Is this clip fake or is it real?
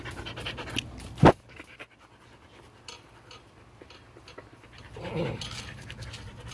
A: real